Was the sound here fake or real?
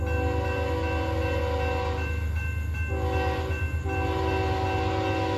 real